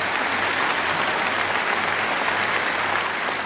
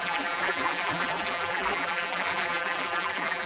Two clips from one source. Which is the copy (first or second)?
second